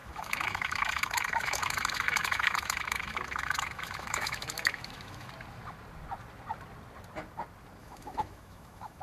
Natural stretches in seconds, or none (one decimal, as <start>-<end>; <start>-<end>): 5.3-7.8